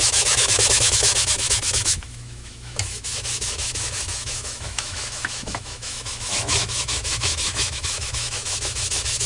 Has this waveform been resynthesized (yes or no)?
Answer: yes